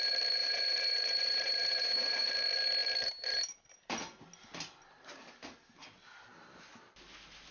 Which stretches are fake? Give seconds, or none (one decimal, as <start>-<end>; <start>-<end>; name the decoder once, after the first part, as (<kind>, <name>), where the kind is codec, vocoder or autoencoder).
0.4-2.3 (vocoder, Vocos)